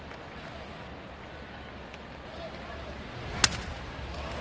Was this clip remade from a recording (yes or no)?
no